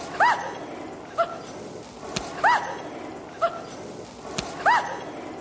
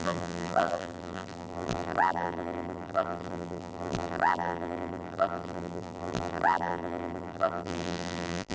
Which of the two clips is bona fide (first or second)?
first